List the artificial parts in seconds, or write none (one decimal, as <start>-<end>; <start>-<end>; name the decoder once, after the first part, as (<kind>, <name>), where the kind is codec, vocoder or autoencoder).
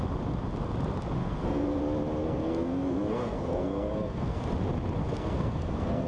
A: 1.2-1.8 (codec, SNAC); 2.2-4.4; 5.0-6.1